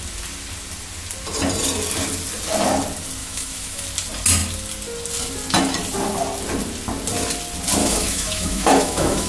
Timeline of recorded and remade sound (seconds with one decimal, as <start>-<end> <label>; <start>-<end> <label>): 0.0-3.2 recorded; 3.2-3.8 remade; 3.8-7.8 recorded; 7.8-9.3 remade